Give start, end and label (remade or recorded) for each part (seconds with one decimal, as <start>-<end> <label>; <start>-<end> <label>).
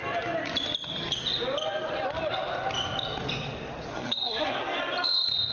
0.0-3.9 recorded; 3.9-4.6 remade; 4.6-5.5 recorded